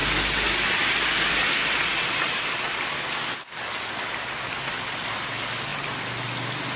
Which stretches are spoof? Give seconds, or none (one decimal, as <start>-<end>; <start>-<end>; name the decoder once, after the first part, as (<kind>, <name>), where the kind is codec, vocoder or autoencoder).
none